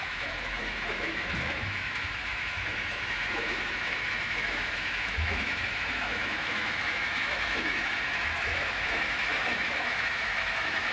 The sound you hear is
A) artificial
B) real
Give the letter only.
A